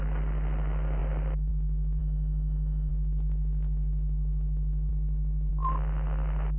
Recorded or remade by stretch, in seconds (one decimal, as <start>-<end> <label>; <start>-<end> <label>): 0.0-2.0 recorded; 2.0-2.9 remade; 2.9-6.6 recorded